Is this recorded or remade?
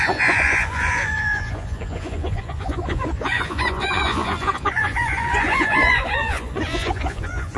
remade